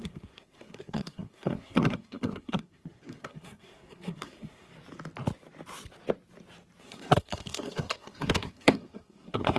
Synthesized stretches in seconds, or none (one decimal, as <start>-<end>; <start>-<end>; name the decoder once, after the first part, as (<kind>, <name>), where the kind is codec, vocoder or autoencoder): 0.0-4.7 (codec, SNAC); 6.8-9.6